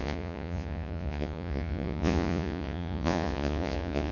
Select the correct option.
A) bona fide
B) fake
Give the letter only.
B